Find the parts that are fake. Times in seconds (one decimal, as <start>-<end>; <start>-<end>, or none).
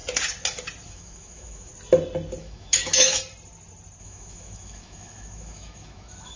0.9-1.7; 2.4-3.2; 4.0-6.4